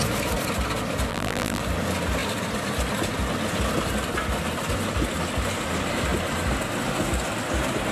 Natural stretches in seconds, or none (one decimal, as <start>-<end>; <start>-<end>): 0.0-1.1; 1.6-7.9